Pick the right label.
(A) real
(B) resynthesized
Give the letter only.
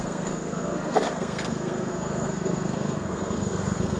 B